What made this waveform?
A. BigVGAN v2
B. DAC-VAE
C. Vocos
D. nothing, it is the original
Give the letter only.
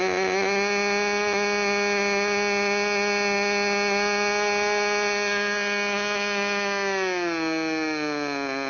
D